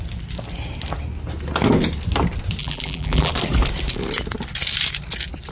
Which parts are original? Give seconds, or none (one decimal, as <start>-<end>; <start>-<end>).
0.0-2.6; 3.3-5.5